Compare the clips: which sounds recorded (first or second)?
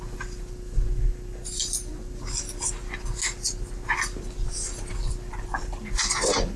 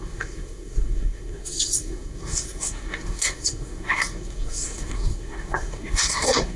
first